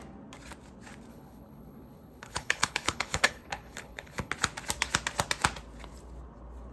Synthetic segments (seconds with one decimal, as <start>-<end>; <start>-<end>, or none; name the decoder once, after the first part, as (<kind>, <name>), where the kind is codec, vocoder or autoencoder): 1.1-4.3 (codec, HILCodec)